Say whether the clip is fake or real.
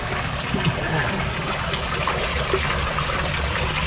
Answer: real